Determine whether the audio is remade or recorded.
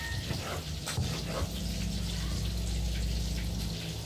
recorded